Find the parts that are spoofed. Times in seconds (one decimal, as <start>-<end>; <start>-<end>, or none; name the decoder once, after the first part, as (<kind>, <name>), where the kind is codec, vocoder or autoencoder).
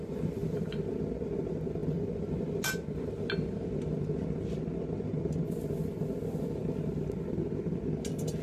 none